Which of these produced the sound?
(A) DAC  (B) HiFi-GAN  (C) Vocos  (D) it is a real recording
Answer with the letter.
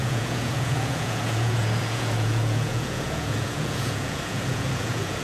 C